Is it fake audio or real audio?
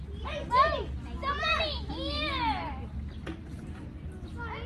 real